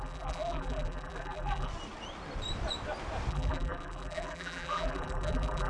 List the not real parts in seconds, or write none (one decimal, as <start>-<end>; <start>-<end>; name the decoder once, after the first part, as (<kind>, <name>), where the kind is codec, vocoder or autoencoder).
0.0-1.7 (vocoder, BigVGAN v2); 3.3-5.7